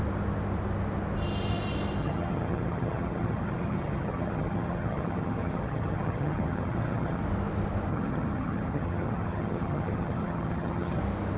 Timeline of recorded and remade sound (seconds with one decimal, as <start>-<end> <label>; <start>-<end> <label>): 0.0-2.0 recorded; 2.0-7.2 remade; 7.2-7.9 recorded; 7.9-11.0 remade; 11.0-11.4 recorded